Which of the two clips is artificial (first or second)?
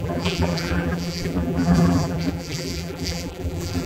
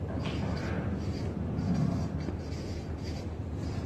first